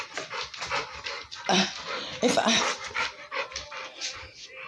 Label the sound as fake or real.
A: real